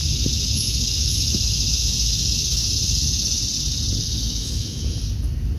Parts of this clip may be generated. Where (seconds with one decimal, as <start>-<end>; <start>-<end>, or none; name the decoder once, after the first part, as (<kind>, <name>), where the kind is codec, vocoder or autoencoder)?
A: 0.0-3.4 (autoencoder, DAC-VAE); 4.0-5.0